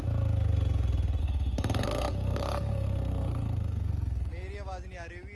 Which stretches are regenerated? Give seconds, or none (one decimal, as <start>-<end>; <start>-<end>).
1.2-4.3